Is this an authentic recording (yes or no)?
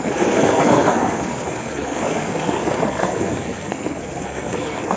no